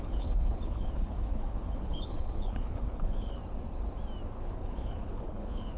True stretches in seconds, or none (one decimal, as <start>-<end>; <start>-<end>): 3.4-4.3